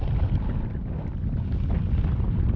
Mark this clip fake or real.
real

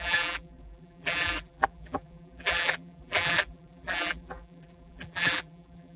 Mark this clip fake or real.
fake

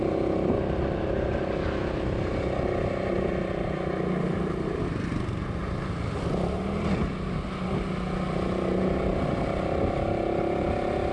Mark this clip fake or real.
real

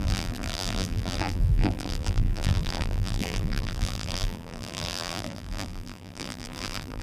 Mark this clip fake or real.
fake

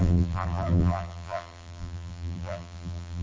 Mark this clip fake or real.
fake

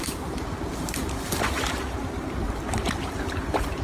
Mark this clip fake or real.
fake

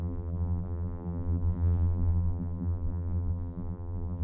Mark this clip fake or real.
fake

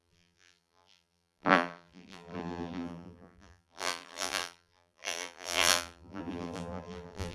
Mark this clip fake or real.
fake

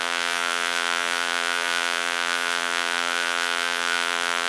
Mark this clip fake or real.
fake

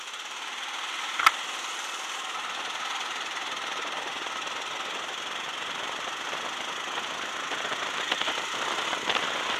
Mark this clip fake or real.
real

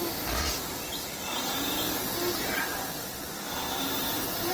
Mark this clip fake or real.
real